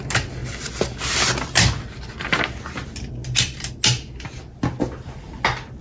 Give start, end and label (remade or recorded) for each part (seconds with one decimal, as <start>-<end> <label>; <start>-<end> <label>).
0.0-5.8 recorded